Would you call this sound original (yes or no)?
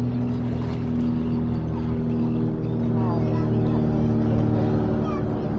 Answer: yes